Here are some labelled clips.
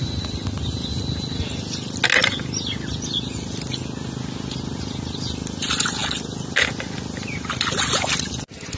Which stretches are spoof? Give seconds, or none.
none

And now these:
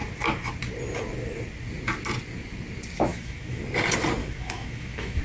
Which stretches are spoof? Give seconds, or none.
3.1-3.6 (autoencoder, DAC-VAE); 4.2-5.2

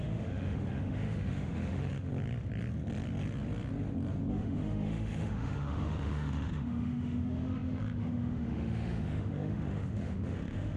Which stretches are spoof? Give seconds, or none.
0.0-2.1 (autoencoder, DAC-VAE); 4.3-10.8

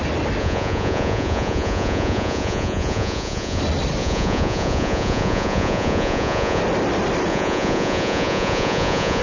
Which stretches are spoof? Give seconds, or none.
0.4-3.6 (vocoder, Vocos); 4.0-6.6; 7.3-9.2

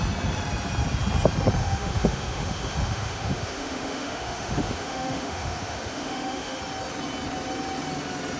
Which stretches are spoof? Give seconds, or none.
1.6-6.6 (autoencoder, DAC-VAE)

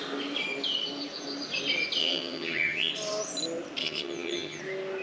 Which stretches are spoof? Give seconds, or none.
2.0-2.9 (vocoder, HiFi-GAN); 3.8-4.6

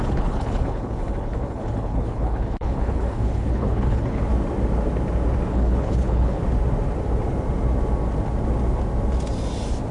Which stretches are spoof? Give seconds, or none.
0.0-4.3 (codec, HILCodec); 5.5-6.4